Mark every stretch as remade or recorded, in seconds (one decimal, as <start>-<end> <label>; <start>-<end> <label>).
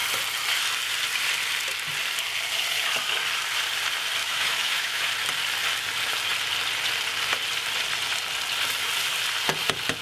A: 0.0-4.2 recorded; 4.2-5.1 remade; 5.1-10.0 recorded